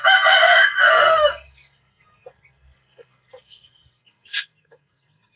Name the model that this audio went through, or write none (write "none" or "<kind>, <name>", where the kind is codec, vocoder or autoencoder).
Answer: codec, SNAC